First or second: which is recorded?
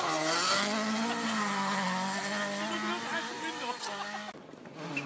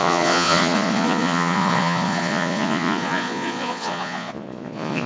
first